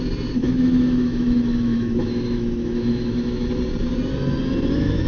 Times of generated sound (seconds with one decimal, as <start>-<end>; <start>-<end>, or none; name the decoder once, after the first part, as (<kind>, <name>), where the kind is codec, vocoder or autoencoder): 0.4-3.5 (autoencoder, DAC-VAE)